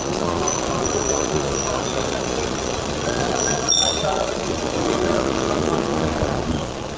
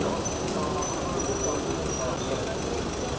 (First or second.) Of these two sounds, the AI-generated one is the first